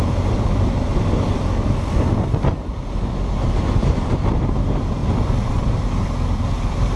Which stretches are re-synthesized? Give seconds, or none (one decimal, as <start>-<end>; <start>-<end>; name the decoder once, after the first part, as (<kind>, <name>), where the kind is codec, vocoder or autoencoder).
0.0-0.9 (vocoder, BigVGAN v2); 3.3-5.0; 5.5-7.0